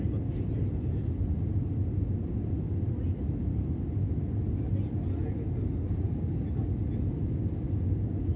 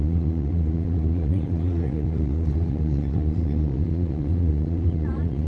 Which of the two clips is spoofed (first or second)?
second